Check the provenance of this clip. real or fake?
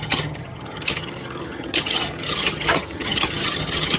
fake